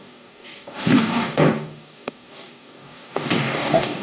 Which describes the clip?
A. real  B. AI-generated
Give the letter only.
B